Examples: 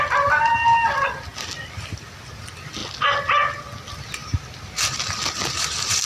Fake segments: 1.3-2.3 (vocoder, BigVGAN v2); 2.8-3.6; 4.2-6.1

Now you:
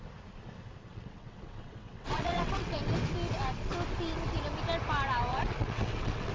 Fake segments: 0.9-2.8 (vocoder, WaveNeXt); 5.3-6.3

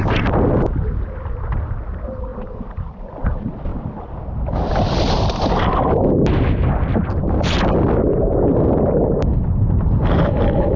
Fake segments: none